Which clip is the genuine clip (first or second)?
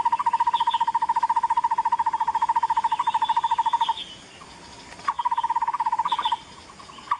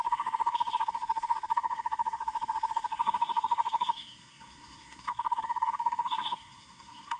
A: first